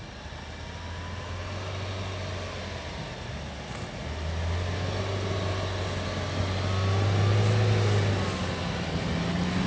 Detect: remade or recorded recorded